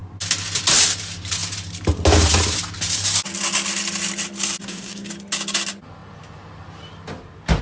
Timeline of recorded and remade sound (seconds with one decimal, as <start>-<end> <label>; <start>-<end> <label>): 0.0-4.6 recorded; 4.6-5.1 remade; 5.1-7.6 recorded